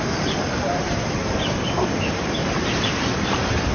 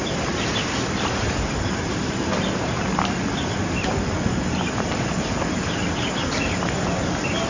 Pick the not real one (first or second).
first